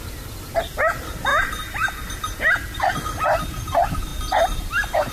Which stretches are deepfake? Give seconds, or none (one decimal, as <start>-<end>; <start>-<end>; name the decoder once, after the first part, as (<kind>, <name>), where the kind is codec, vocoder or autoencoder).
none